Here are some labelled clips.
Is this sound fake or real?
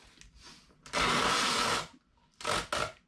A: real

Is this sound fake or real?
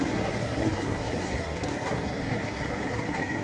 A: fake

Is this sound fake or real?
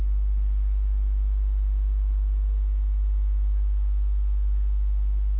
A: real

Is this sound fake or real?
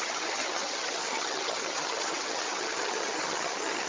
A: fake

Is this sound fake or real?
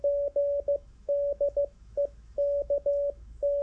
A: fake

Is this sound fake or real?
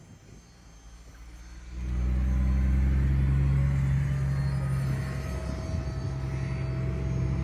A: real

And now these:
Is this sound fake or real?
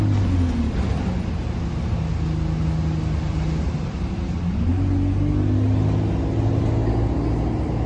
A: real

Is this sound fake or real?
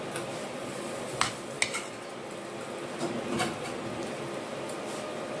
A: real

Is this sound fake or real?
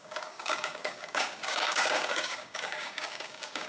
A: fake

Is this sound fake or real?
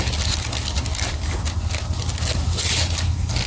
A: real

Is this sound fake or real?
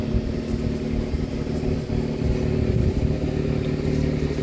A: real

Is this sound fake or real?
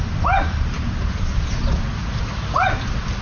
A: real